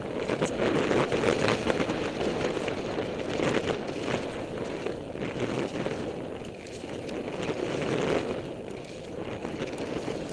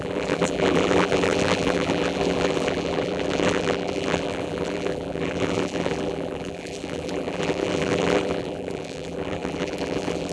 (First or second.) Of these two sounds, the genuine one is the first